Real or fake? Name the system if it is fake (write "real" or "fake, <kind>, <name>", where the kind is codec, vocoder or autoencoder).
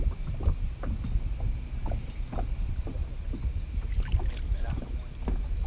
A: real